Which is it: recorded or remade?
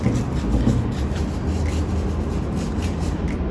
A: recorded